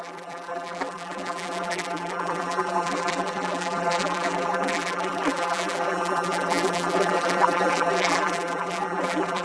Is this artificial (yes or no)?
yes